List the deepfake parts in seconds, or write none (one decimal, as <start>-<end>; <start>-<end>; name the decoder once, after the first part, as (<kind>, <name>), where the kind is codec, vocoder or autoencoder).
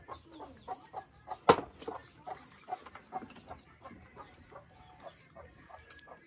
none